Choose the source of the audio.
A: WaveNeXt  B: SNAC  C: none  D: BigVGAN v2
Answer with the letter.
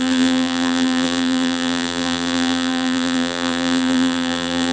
D